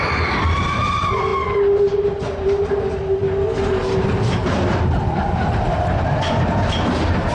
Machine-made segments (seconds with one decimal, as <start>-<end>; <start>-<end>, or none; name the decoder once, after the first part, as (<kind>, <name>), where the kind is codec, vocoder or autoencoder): none